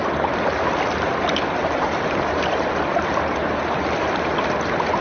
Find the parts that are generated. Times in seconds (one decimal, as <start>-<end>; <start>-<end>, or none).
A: none